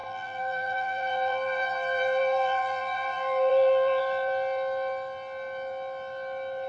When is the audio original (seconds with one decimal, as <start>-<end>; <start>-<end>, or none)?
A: 4.0-6.7

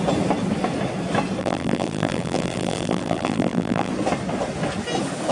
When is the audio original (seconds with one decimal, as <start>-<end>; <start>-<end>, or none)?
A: 0.0-1.4; 3.9-5.3

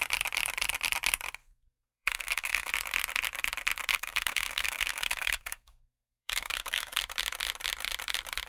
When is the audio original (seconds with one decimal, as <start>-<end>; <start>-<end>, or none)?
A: 0.0-1.4; 2.7-3.9; 7.0-8.5

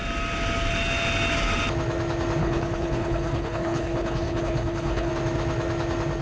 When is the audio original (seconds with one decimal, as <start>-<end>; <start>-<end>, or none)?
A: 0.0-2.4; 5.1-6.2

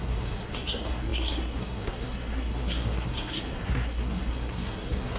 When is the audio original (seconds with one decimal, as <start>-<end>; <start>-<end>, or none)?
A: none

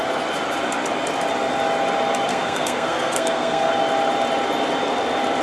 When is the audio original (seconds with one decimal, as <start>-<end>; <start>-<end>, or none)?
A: 0.0-2.3; 3.7-5.4

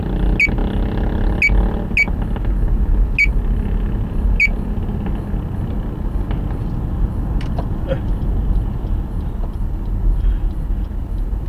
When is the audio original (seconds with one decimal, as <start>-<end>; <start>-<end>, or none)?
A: 0.0-11.5

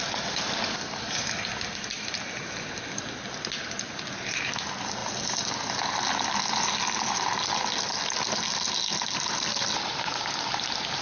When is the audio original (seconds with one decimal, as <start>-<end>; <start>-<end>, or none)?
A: 0.0-11.0